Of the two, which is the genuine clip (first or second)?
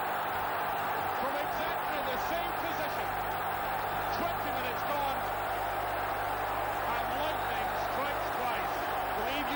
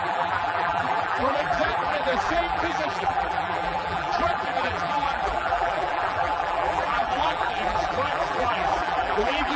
first